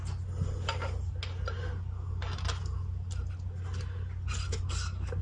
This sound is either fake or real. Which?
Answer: real